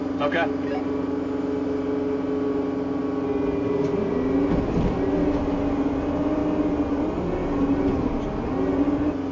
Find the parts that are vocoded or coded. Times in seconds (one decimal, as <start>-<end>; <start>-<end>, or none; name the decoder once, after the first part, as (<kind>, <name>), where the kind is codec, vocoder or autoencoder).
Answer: none